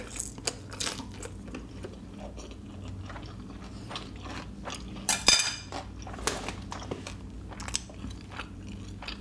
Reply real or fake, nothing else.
real